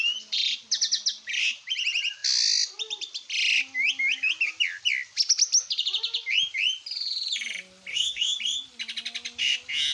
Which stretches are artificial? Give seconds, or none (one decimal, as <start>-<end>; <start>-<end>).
7.9-8.4